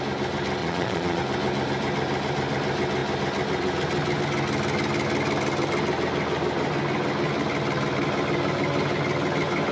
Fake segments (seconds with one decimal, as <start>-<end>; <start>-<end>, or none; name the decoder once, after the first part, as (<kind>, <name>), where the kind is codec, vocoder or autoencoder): 0.6-1.2 (vocoder, Vocos)